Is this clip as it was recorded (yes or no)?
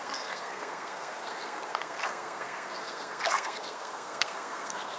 no